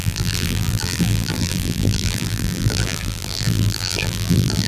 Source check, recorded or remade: remade